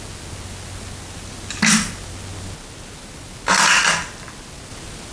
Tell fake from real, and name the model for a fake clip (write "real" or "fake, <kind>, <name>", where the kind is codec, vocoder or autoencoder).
real